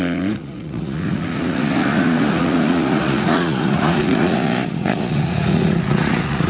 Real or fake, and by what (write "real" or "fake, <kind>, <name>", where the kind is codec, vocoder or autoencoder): fake, vocoder, Vocos